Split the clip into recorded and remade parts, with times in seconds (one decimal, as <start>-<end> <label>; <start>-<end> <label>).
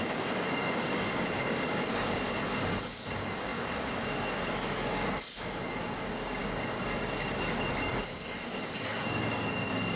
0.0-10.0 remade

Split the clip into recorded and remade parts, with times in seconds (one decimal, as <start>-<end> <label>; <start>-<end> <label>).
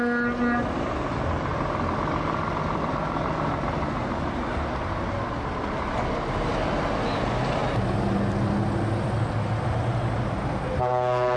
0.0-11.4 recorded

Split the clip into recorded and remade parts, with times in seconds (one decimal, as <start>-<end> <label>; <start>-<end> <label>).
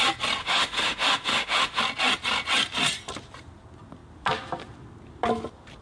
0.0-0.4 recorded; 0.4-1.8 remade; 1.8-5.8 recorded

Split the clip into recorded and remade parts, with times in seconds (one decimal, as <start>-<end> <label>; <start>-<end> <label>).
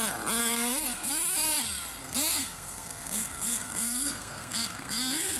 0.0-0.4 recorded; 0.4-1.1 remade; 1.1-2.0 recorded; 2.0-5.4 remade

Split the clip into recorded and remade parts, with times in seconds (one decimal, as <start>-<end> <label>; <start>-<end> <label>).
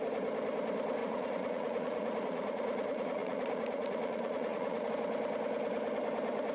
0.0-1.0 recorded; 1.0-4.9 remade; 4.9-6.5 recorded